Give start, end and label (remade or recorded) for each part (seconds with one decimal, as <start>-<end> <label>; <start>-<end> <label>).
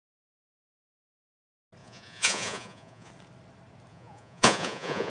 0.0-1.8 recorded; 1.8-3.1 remade; 3.1-3.9 recorded; 3.9-5.1 remade